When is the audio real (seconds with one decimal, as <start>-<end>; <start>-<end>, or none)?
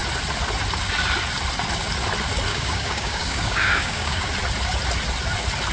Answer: 0.0-2.5; 4.3-5.7